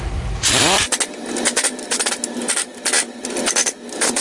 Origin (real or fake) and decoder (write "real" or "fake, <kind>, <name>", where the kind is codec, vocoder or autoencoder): real